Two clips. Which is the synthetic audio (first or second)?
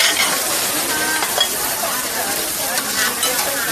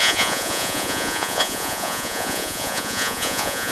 second